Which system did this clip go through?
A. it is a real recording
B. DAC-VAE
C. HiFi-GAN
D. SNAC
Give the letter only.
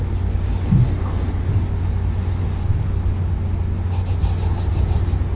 A